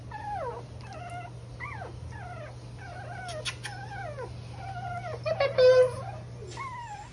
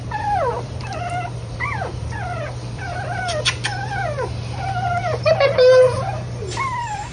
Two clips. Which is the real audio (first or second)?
first